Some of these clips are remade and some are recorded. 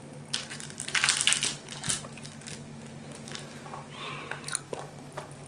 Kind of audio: recorded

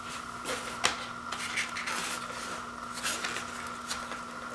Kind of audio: recorded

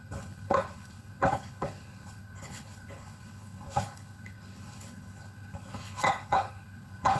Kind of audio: remade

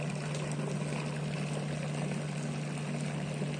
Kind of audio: recorded